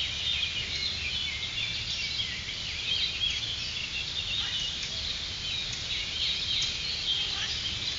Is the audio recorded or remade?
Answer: recorded